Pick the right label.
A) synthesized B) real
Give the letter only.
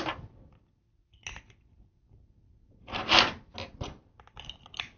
B